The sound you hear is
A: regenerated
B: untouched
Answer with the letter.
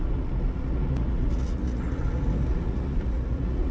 A